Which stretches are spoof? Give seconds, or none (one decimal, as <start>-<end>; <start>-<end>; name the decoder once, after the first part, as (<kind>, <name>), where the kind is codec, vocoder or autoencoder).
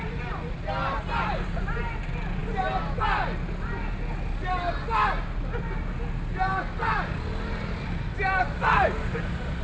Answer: none